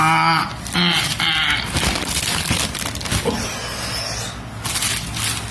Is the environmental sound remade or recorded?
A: recorded